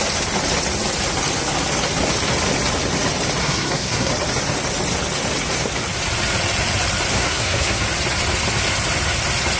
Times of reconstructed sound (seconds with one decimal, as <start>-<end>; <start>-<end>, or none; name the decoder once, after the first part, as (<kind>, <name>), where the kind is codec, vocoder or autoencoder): 3.4-4.1 (codec, SNAC); 7.1-7.8